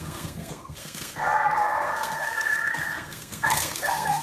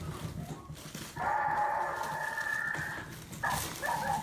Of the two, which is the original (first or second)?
second